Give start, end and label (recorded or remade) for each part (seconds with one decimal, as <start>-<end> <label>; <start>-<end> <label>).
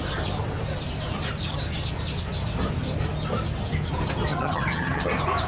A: 0.0-4.3 recorded; 4.3-5.1 remade; 5.1-5.5 recorded